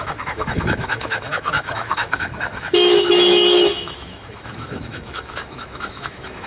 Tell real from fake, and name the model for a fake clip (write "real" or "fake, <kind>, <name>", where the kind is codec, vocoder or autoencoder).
fake, autoencoder, DAC-VAE